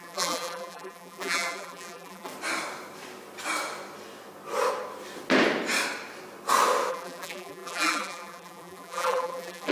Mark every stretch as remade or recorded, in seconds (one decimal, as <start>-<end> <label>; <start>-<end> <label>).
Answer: 0.0-2.3 remade; 2.3-6.9 recorded; 6.9-9.7 remade